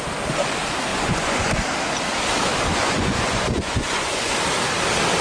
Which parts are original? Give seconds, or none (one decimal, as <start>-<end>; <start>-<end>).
0.0-0.9; 1.5-2.7; 4.3-5.2